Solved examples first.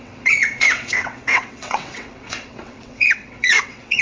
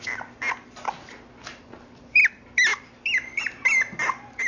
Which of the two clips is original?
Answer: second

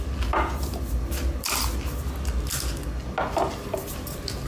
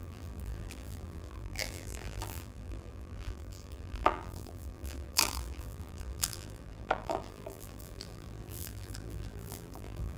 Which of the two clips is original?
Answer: first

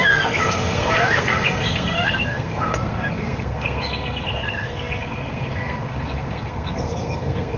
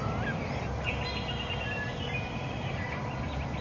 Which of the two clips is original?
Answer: second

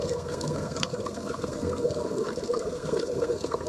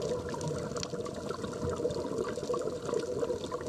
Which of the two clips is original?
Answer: second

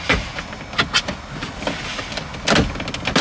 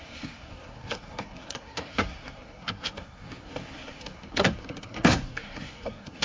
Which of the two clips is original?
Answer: first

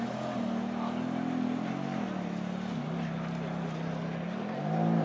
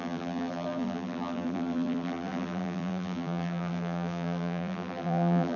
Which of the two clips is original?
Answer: first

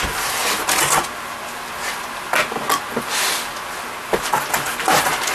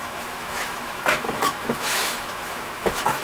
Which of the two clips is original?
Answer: first